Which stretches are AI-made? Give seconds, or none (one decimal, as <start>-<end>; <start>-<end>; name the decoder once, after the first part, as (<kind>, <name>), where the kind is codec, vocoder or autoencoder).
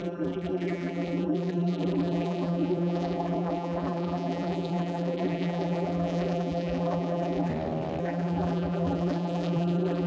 0.0-7.5 (vocoder, BigVGAN v2); 8.0-10.1